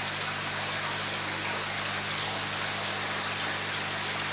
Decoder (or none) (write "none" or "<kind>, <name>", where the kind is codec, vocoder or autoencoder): none